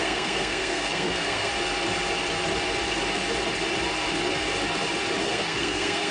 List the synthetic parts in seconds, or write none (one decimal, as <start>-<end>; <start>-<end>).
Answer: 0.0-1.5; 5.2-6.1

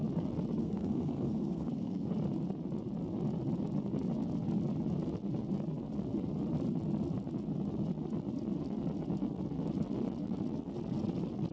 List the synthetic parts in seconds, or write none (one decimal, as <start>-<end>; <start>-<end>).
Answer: 0.6-2.1

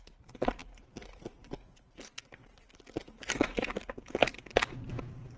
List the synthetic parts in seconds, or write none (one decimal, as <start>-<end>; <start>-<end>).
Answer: none

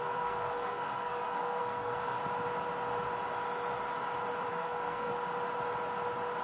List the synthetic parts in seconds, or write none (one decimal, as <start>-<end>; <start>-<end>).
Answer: 0.0-2.2; 4.5-5.1